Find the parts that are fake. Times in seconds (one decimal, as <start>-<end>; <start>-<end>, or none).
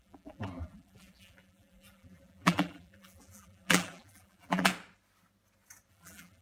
0.0-4.7; 5.9-6.4